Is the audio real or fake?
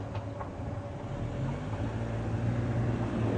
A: real